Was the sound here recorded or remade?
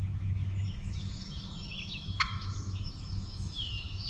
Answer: remade